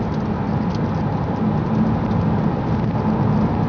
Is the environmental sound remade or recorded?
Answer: recorded